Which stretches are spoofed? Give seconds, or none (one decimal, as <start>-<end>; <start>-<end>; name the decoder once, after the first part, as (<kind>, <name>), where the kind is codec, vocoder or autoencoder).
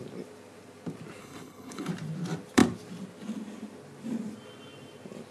1.2-1.9 (codec, HILCodec)